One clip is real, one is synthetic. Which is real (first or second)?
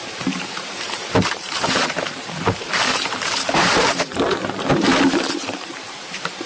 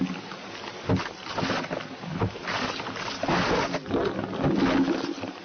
second